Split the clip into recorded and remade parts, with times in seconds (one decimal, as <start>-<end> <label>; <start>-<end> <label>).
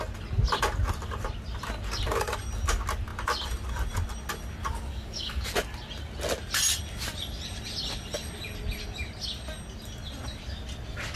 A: 0.0-4.6 recorded; 4.6-5.5 remade; 5.5-11.2 recorded